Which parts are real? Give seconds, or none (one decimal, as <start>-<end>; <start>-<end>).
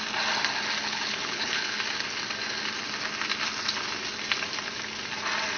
0.0-0.8; 1.8-5.6